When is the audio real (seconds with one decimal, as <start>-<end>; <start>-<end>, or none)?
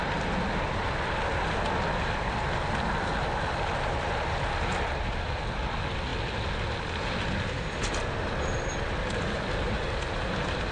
0.0-10.7